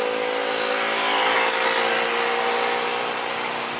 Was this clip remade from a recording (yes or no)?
no